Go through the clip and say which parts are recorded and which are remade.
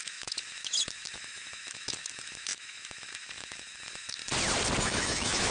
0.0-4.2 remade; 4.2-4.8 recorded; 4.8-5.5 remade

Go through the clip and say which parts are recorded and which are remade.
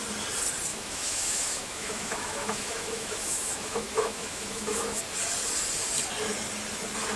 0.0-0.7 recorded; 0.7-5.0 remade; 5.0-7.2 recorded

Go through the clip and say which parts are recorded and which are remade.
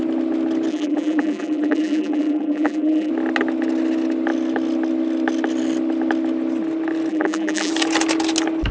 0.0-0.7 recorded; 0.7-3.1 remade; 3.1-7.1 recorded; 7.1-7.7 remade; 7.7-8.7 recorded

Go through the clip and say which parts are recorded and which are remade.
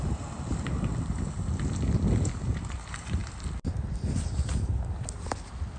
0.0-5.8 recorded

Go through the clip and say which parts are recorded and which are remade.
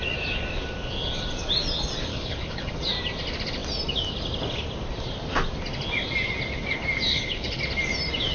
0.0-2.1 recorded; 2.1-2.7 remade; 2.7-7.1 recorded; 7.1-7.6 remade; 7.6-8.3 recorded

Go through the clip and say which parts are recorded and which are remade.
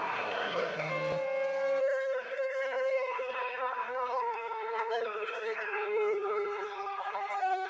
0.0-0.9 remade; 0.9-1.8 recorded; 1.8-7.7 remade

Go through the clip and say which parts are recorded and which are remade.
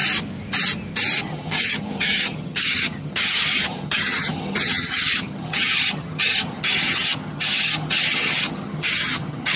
0.0-1.2 recorded; 1.2-9.6 remade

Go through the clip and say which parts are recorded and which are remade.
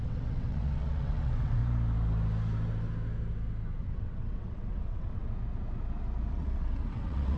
0.0-1.6 remade; 1.6-3.8 recorded; 3.8-5.2 remade; 5.2-6.3 recorded; 6.3-7.4 remade